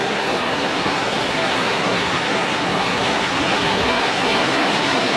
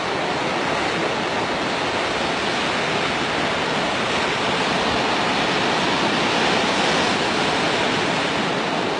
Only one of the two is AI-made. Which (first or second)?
first